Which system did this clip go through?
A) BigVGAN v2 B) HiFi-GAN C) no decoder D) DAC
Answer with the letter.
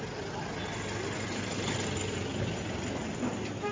C